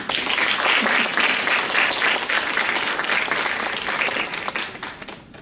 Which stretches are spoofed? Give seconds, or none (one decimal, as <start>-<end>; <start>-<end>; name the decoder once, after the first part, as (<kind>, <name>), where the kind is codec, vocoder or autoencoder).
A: none